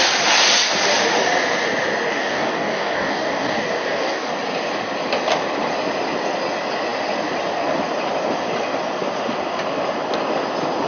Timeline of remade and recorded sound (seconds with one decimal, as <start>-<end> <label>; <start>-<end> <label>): 0.0-2.1 recorded; 2.1-4.3 remade; 4.3-10.9 recorded